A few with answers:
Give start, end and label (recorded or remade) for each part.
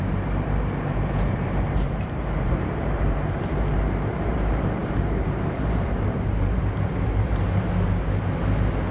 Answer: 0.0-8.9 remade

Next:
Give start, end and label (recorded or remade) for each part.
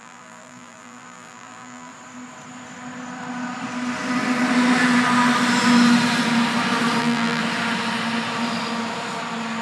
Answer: 0.0-1.9 remade; 1.9-7.0 recorded; 7.0-7.4 remade; 7.4-9.6 recorded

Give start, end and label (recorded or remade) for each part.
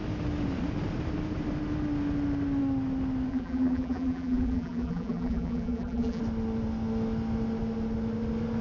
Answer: 0.0-3.3 recorded; 3.3-6.2 remade; 6.2-8.6 recorded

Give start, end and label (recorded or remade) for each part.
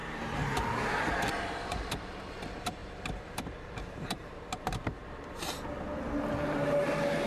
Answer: 0.0-1.3 remade; 1.3-2.8 recorded; 2.8-4.4 remade; 4.4-7.3 recorded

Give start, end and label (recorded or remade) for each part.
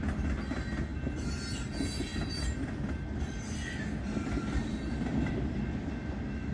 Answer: 0.0-2.1 recorded; 2.1-5.9 remade; 5.9-6.5 recorded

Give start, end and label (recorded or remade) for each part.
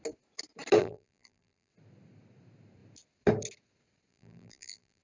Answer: 0.0-0.8 recorded; 0.8-1.7 remade; 1.7-4.1 recorded; 4.1-5.0 remade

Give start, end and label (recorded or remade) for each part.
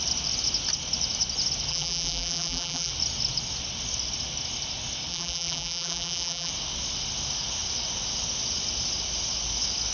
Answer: 0.0-1.7 recorded; 1.7-2.9 remade; 2.9-5.1 recorded; 5.1-6.5 remade; 6.5-9.9 recorded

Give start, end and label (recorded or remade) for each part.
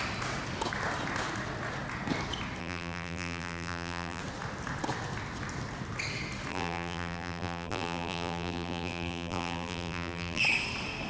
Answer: 0.0-2.6 recorded; 2.6-4.2 remade; 4.2-6.5 recorded; 6.5-10.4 remade; 10.4-11.1 recorded